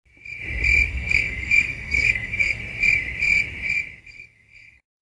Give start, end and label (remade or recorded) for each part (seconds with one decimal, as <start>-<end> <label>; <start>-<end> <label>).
0.0-0.9 recorded; 0.9-2.6 remade; 2.6-4.0 recorded; 4.0-5.0 remade